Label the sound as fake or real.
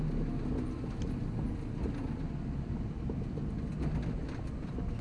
real